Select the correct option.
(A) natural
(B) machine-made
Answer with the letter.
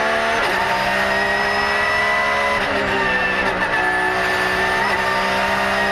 A